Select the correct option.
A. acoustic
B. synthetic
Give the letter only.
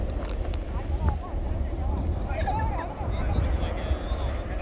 A